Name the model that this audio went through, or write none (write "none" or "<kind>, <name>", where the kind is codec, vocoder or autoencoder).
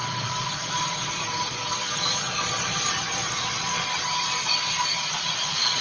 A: vocoder, Vocos